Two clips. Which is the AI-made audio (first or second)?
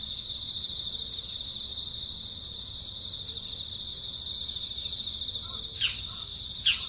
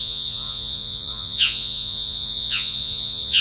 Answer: second